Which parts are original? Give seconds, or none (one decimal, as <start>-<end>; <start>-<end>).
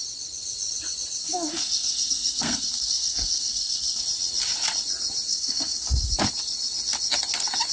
0.0-1.2; 4.0-5.3; 6.1-7.7